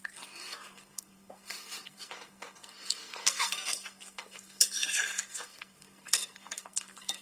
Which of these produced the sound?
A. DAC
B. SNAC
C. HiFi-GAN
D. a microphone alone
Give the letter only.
B